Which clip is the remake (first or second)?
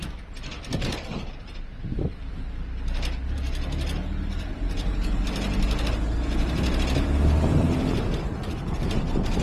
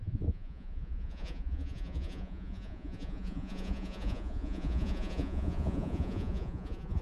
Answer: second